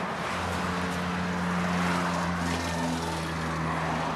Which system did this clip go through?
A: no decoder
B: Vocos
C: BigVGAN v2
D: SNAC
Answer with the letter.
A